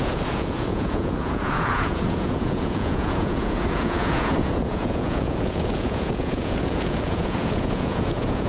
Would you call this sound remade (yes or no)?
yes